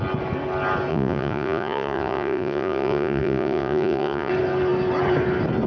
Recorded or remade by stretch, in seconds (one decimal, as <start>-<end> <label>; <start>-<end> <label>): 0.0-0.9 recorded; 0.9-4.3 remade; 4.3-5.7 recorded